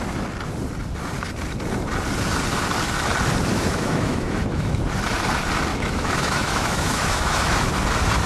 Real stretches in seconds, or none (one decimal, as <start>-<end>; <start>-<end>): 0.0-3.5; 4.8-5.7; 7.7-8.3